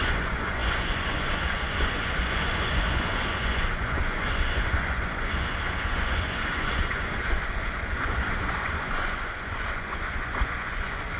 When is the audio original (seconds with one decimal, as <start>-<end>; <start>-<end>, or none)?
none